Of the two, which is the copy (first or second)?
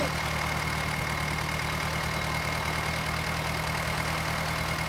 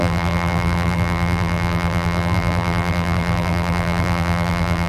second